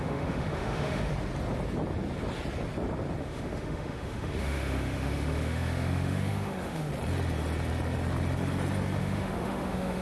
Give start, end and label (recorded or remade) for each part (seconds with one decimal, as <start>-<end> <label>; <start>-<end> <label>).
0.0-1.1 remade; 1.1-3.2 recorded; 3.2-6.9 remade; 6.9-9.0 recorded; 9.0-10.0 remade

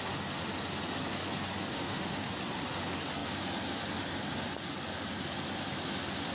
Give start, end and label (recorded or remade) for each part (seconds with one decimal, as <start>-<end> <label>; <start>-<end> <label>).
0.0-1.7 recorded; 1.7-2.3 remade; 2.3-6.3 recorded

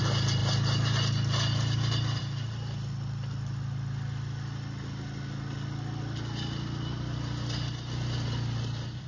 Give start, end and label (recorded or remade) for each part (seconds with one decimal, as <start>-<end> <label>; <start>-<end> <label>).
0.0-9.1 recorded

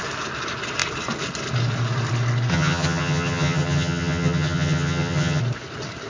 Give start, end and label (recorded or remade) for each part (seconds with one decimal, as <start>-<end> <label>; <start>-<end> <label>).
0.0-2.5 recorded; 2.5-5.4 remade; 5.4-6.1 recorded

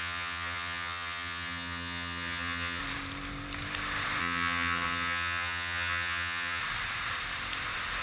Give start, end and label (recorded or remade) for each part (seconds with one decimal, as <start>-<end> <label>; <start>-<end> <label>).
0.0-2.8 remade; 2.8-4.2 recorded; 4.2-6.6 remade; 6.6-8.0 recorded